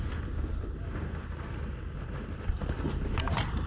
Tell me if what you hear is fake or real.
real